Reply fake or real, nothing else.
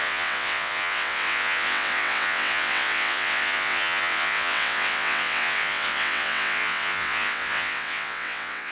fake